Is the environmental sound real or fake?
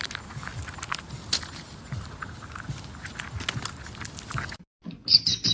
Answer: real